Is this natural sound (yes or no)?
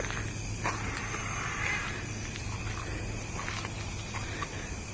yes